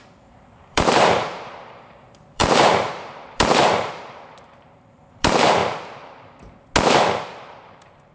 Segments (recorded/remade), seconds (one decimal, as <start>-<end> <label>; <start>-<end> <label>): 0.0-5.6 remade; 5.6-7.2 recorded; 7.2-8.1 remade